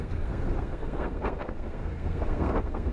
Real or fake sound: fake